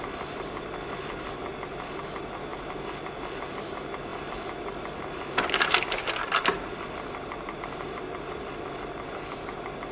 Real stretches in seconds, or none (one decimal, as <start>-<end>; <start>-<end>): 0.0-9.9